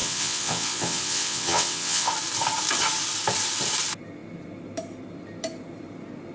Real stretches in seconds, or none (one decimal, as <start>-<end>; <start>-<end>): 2.1-6.3